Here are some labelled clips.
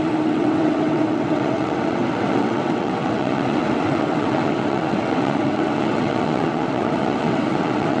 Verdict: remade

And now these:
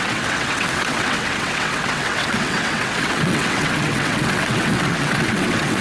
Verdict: remade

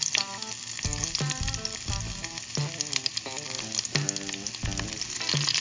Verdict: recorded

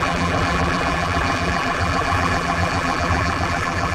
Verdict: remade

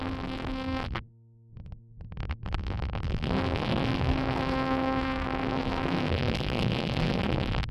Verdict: remade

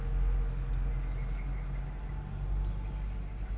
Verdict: recorded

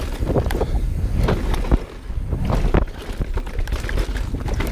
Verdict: recorded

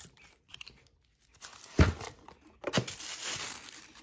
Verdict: recorded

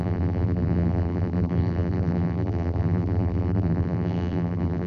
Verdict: remade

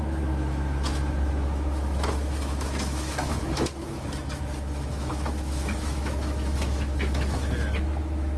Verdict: remade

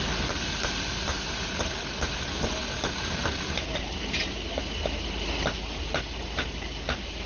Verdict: recorded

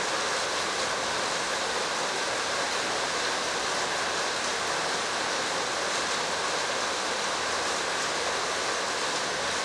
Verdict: recorded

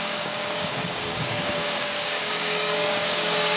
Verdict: remade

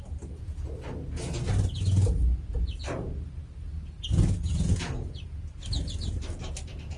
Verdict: recorded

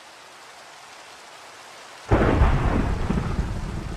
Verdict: recorded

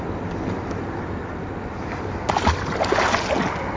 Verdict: recorded